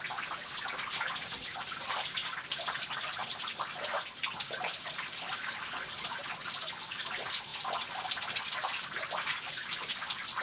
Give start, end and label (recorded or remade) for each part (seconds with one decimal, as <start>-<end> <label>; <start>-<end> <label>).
0.0-10.4 recorded